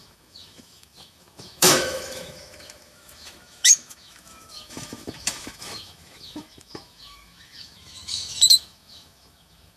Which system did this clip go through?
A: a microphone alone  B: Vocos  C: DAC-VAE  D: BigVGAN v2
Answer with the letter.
C